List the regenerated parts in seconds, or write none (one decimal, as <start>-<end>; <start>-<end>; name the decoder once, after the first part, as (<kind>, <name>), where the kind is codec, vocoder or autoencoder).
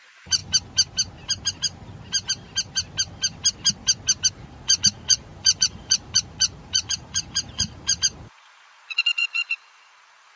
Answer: 0.0-0.4 (vocoder, Vocos); 4.3-10.4